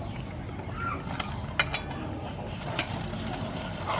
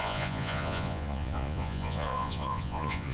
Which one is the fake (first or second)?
second